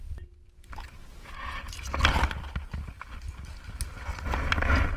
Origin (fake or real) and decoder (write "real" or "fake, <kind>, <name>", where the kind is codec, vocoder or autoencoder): real